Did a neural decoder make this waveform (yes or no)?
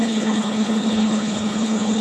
yes